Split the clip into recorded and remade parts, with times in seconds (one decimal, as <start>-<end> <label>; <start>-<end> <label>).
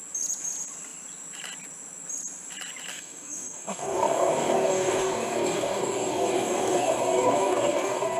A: 0.0-2.9 recorded; 2.9-8.2 remade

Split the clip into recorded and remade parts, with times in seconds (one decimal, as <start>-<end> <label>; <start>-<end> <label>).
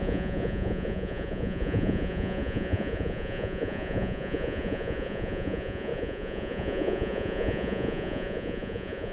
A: 0.0-9.1 remade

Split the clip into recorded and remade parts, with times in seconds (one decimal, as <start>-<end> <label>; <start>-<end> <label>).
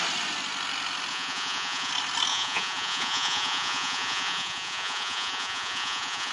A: 0.0-1.1 recorded; 1.1-1.9 remade; 1.9-2.3 recorded; 2.3-6.3 remade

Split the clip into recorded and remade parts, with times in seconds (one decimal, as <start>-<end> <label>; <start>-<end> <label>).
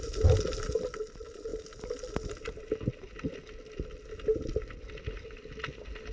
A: 0.0-6.1 recorded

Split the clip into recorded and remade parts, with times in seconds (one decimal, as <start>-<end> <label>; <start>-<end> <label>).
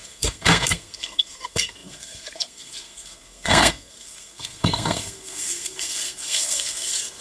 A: 0.0-7.2 remade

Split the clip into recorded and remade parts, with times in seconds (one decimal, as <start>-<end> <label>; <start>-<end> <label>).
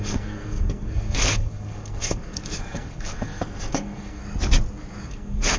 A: 0.0-4.2 remade; 4.2-5.0 recorded; 5.0-5.6 remade